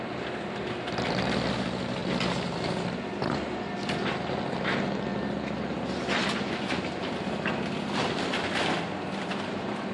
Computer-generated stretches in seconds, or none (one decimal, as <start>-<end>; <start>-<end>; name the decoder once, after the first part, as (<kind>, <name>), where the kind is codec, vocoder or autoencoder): none

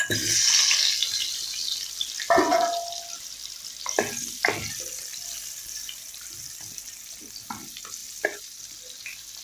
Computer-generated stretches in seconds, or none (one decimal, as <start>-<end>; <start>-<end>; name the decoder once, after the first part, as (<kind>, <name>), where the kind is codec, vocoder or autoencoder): none